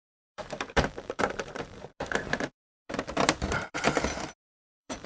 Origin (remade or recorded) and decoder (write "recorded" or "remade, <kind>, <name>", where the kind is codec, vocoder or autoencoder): remade, vocoder, BigVGAN v2